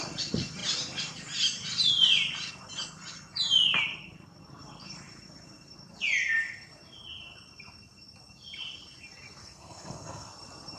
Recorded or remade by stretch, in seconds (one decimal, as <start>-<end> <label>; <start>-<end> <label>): 0.0-9.4 recorded; 9.4-10.3 remade; 10.3-10.8 recorded